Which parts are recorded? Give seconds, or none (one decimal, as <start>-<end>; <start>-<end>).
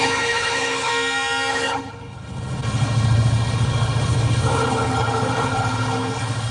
0.9-1.5